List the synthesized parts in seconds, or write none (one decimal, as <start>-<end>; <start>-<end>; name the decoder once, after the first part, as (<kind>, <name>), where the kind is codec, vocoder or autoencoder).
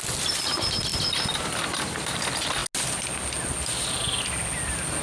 none